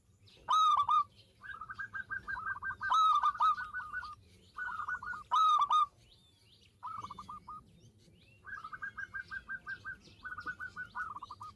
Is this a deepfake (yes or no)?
yes